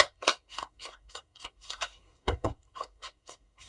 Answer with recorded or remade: remade